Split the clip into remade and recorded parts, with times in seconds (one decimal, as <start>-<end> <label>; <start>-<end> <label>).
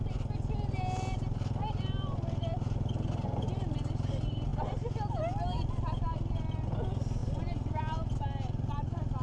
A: 0.0-7.2 recorded; 7.2-7.8 remade; 7.8-9.2 recorded